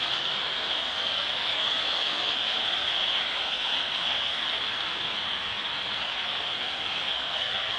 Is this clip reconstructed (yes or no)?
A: yes